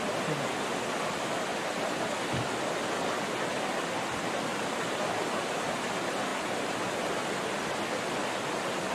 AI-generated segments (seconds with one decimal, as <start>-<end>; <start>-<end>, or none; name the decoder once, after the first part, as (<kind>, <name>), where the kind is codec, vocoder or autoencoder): 1.5-2.1 (vocoder, BigVGAN v2); 4.5-5.5; 6.3-7.0